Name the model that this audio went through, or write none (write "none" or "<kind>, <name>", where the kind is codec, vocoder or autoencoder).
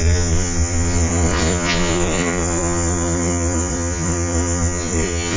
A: vocoder, Vocos